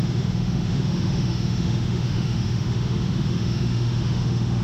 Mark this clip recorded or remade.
remade